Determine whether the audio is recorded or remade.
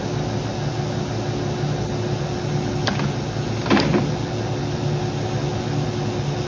recorded